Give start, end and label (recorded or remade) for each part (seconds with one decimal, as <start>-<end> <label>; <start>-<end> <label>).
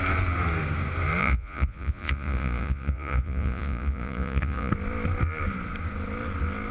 0.0-1.2 recorded; 1.2-4.7 remade; 4.7-6.7 recorded